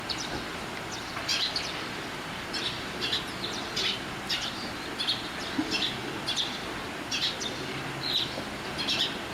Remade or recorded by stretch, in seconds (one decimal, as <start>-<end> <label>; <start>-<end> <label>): 0.0-1.3 recorded; 1.3-3.7 remade; 3.7-9.3 recorded